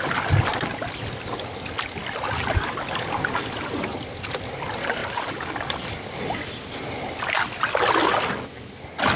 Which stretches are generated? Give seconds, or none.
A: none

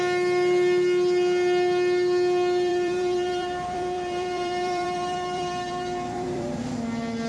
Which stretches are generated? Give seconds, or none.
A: 2.7-6.6

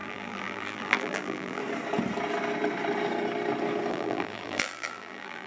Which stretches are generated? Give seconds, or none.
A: 0.0-1.6; 3.9-5.5

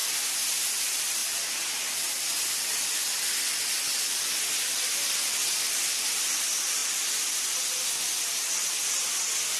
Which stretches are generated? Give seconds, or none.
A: 0.7-1.2; 4.0-6.8; 7.6-9.6

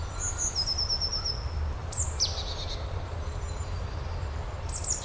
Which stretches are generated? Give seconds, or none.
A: 1.8-4.0